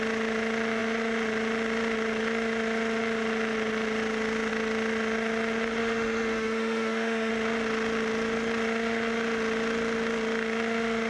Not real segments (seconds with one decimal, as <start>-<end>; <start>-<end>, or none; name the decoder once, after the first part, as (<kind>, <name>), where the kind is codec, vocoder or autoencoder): 5.8-7.3 (autoencoder, DAC-VAE)